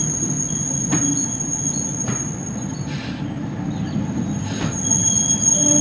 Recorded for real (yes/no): yes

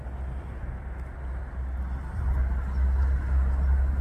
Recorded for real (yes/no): yes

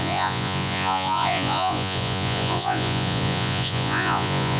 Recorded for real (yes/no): no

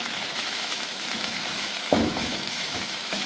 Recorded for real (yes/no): no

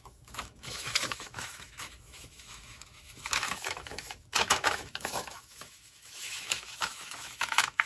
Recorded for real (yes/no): no